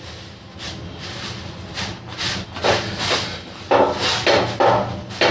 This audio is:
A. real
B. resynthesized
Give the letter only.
A